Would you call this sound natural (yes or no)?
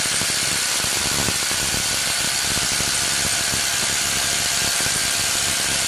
no